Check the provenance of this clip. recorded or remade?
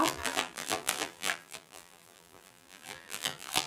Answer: remade